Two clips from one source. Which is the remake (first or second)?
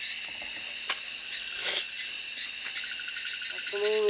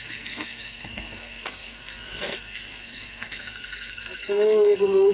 second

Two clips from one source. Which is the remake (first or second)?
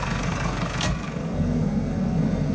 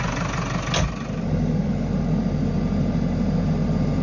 first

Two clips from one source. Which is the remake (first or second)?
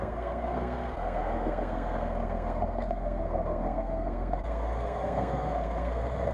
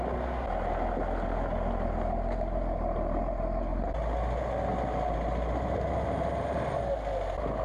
first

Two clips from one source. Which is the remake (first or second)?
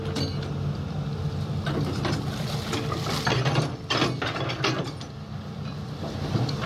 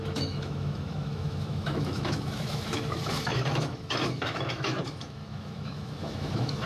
second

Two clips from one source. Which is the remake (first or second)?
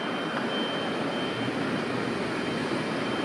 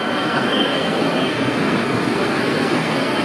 second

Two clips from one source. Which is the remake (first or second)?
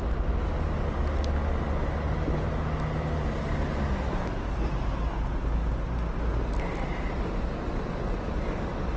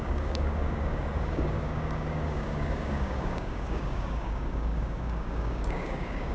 second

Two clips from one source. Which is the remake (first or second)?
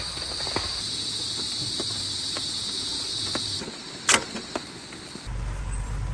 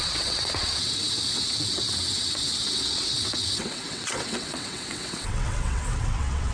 second